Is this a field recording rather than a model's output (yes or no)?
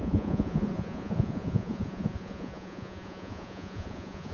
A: no